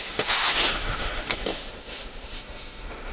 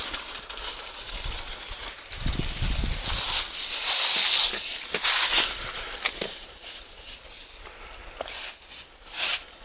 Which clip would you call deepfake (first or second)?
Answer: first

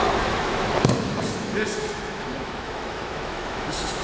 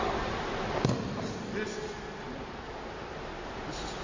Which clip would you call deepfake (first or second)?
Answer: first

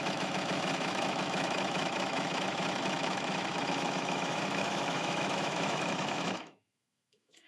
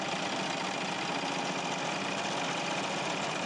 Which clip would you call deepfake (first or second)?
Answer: first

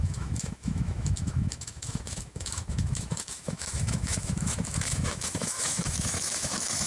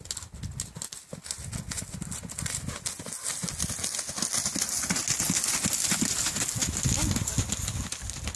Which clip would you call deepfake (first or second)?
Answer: first